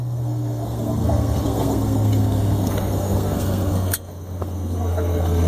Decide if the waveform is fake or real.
fake